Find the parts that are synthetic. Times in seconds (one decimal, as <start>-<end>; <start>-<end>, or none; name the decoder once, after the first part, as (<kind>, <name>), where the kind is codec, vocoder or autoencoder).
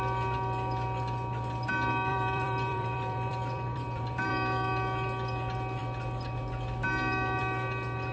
2.1-4.3 (vocoder, BigVGAN v2)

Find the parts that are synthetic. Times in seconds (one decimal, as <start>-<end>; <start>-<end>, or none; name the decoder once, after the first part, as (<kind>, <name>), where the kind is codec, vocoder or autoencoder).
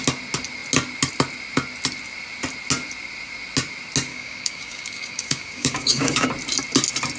4.1-6.3 (codec, DAC)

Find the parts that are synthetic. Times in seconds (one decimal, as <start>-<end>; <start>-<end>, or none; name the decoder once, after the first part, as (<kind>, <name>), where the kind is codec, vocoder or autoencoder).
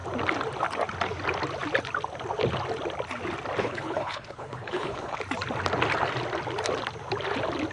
3.6-5.2 (codec, HILCodec)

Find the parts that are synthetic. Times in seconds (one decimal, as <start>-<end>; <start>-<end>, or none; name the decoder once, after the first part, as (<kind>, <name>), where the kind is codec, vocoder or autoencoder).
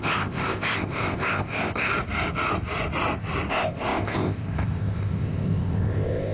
0.0-1.9 (codec, ZipCodec); 3.5-6.3